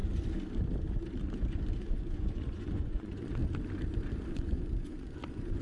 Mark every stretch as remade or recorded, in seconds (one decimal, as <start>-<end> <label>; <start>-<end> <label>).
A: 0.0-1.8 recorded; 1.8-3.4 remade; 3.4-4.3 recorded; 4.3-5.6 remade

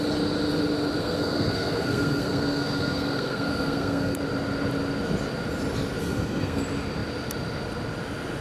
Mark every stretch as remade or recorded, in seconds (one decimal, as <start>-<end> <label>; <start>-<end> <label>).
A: 0.0-1.0 recorded; 1.0-4.2 remade; 4.2-6.0 recorded; 6.0-6.6 remade; 6.6-8.4 recorded

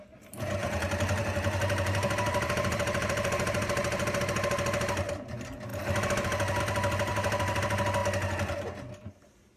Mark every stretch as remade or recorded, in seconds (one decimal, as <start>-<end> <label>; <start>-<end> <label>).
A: 0.0-0.6 recorded; 0.6-4.2 remade; 4.2-7.1 recorded; 7.1-7.6 remade; 7.6-9.6 recorded

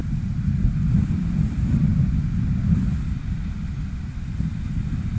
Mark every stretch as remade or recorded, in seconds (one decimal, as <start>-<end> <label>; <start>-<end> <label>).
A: 0.0-1.9 remade; 1.9-5.2 recorded

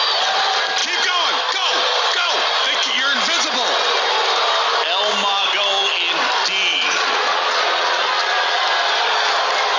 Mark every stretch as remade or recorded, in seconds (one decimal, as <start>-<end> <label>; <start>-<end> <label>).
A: 0.0-6.7 recorded; 6.7-8.6 remade; 8.6-9.8 recorded

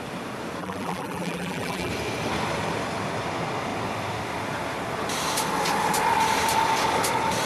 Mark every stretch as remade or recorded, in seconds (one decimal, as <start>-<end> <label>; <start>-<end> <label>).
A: 0.0-0.6 recorded; 0.6-1.9 remade; 1.9-7.5 recorded

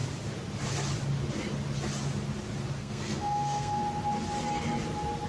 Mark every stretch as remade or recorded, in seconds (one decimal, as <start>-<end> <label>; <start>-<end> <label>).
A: 0.0-2.8 recorded; 2.8-3.8 remade; 3.8-5.3 recorded